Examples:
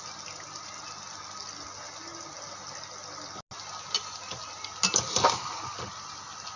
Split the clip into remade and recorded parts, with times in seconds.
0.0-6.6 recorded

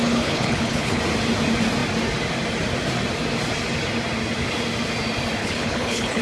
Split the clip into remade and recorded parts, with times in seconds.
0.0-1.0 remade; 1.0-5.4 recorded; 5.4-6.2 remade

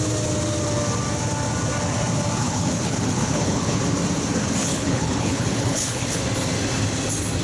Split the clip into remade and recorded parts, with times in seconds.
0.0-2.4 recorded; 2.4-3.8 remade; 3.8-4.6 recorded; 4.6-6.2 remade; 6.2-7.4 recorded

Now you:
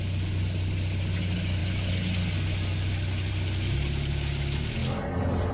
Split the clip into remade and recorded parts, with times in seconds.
0.0-5.5 recorded

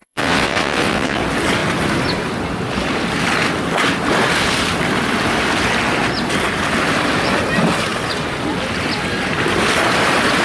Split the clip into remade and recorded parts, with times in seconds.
0.0-1.2 remade; 1.2-10.4 recorded